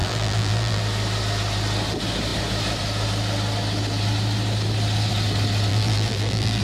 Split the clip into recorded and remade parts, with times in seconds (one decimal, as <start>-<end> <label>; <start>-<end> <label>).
0.0-0.8 remade; 0.8-5.7 recorded; 5.7-6.6 remade